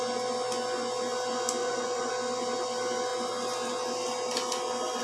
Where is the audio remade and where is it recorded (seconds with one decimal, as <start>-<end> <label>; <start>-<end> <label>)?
0.0-1.6 recorded; 1.6-2.1 remade; 2.1-5.0 recorded